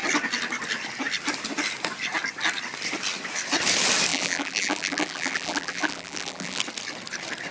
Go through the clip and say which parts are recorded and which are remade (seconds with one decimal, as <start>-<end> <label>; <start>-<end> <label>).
0.0-4.1 recorded; 4.1-6.6 remade; 6.6-7.5 recorded

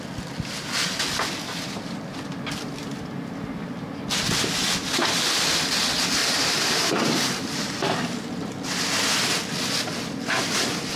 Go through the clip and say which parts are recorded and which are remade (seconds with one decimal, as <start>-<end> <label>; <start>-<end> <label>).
0.0-6.2 recorded; 6.2-8.5 remade; 8.5-11.0 recorded

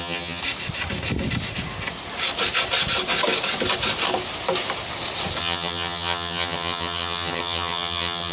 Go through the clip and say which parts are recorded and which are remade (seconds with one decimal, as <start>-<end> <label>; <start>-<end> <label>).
0.0-0.4 remade; 0.4-5.4 recorded; 5.4-8.3 remade